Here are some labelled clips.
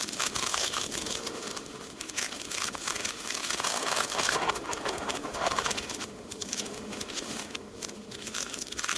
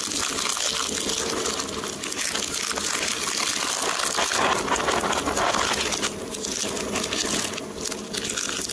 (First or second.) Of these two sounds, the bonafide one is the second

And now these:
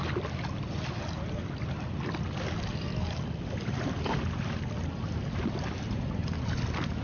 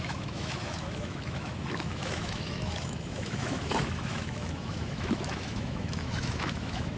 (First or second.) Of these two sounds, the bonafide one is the first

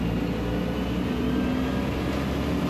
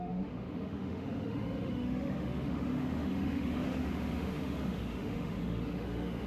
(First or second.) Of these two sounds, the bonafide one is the first